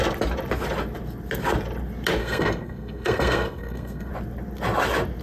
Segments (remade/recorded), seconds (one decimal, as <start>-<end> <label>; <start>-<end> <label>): 0.0-2.2 recorded; 2.2-4.1 remade; 4.1-5.2 recorded